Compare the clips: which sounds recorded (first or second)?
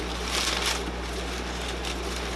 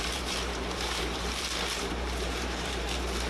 first